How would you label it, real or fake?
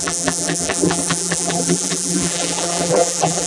fake